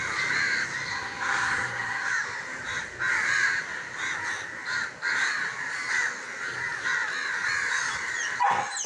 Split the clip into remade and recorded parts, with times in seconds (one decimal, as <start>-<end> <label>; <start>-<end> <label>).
0.0-0.9 recorded; 0.9-2.1 remade; 2.1-8.9 recorded